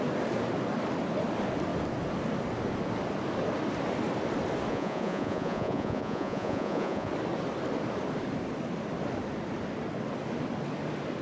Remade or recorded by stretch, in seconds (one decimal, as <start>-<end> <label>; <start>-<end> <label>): 0.0-4.7 recorded; 4.7-7.1 remade; 7.1-11.2 recorded

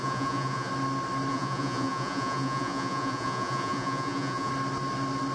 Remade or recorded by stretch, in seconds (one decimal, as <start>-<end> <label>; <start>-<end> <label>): 0.0-0.7 remade; 0.7-1.3 recorded; 1.3-4.5 remade; 4.5-5.3 recorded

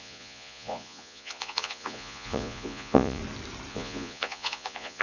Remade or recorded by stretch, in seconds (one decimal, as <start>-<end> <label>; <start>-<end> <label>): 0.0-3.2 remade; 3.2-3.7 recorded; 3.7-5.0 remade

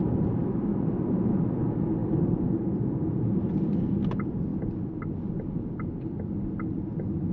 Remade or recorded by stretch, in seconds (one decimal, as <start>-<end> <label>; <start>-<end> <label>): 0.0-0.7 recorded; 0.7-1.4 remade; 1.4-2.0 recorded; 2.0-4.0 remade; 4.0-4.5 recorded; 4.5-5.2 remade; 5.2-7.3 recorded

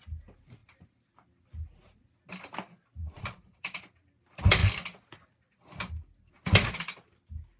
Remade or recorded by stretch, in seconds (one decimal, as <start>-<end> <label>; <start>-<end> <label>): 0.0-3.0 recorded; 3.0-3.6 remade; 3.6-7.6 recorded

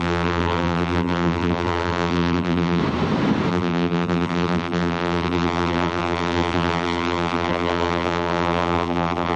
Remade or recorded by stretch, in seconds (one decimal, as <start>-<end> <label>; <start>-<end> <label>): 0.0-2.8 remade; 2.8-3.5 recorded; 3.5-9.4 remade